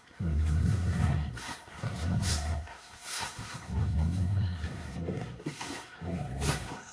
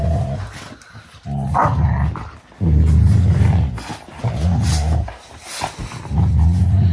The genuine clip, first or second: second